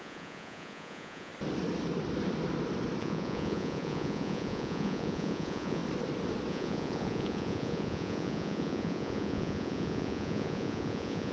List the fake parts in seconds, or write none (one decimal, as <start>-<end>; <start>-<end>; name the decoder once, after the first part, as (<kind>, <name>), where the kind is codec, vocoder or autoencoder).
0.0-1.3 (vocoder, Vocos); 3.0-5.8; 6.5-11.3